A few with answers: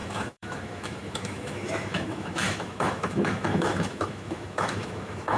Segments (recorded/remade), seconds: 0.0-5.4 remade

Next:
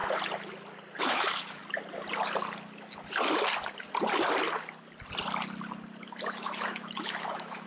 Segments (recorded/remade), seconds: 0.0-1.0 recorded; 1.0-1.6 remade; 1.6-6.2 recorded; 6.2-7.7 remade